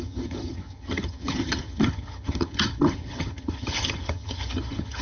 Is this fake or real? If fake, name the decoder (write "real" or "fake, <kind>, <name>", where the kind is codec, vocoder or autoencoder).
fake, vocoder, HiFi-GAN